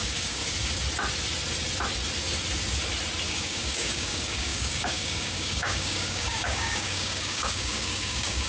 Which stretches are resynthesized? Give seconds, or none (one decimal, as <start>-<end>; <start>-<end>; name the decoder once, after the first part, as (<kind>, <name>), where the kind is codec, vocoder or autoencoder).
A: 0.0-0.4 (codec, DAC); 3.3-8.5